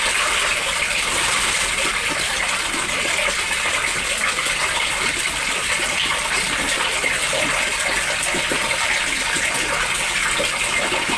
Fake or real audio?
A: real